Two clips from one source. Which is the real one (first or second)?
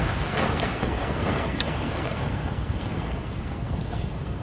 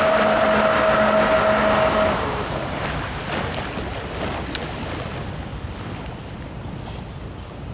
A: second